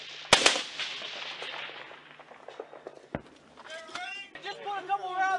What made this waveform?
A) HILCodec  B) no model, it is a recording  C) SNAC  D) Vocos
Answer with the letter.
B